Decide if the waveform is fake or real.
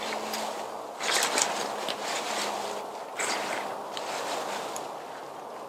real